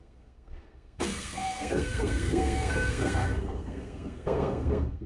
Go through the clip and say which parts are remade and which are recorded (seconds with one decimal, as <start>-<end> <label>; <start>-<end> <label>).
0.0-5.1 remade

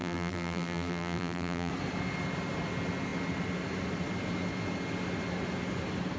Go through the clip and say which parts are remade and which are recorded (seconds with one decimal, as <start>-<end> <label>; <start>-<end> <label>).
0.0-1.7 remade; 1.7-6.2 recorded

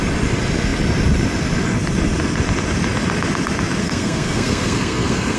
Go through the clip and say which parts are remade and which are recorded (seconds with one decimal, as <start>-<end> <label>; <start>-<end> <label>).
0.0-3.8 recorded; 3.8-5.4 remade